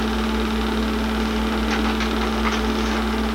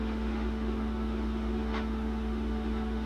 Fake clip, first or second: second